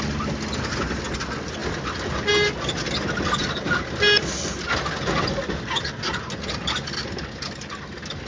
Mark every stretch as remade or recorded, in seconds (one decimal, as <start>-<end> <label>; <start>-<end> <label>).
0.0-8.3 recorded